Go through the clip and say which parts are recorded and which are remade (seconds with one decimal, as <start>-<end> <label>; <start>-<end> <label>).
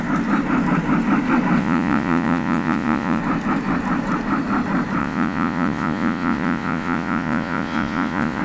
0.0-1.6 recorded; 1.6-3.2 remade; 3.2-5.0 recorded; 5.0-8.4 remade